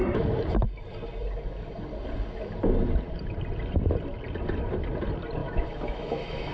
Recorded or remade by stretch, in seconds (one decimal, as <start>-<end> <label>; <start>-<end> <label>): 0.0-5.4 recorded; 5.4-6.5 remade

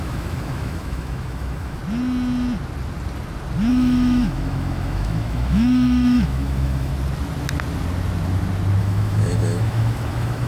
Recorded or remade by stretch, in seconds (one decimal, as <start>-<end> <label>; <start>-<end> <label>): 0.0-1.8 remade; 1.8-3.7 recorded; 3.7-6.9 remade; 6.9-8.8 recorded; 8.8-10.5 remade

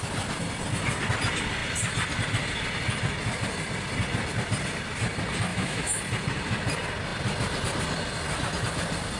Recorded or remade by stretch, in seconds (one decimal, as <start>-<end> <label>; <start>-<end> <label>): 0.0-5.5 recorded; 5.5-6.0 remade; 6.0-9.2 recorded